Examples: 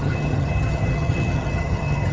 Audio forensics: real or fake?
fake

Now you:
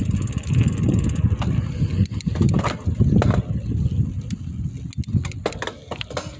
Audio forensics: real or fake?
real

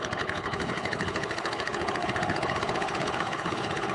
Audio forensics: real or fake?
fake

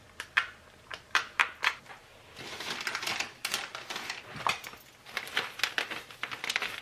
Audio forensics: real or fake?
real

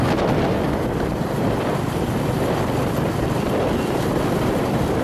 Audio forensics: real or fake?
real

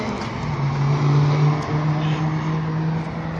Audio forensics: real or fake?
real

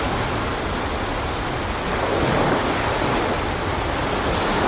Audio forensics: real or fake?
real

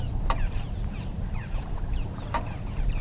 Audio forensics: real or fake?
fake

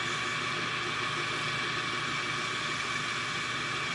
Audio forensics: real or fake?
real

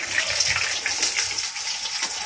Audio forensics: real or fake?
real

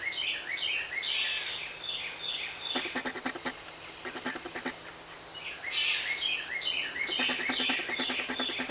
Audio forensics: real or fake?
real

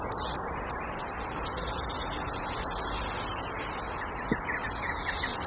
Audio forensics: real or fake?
real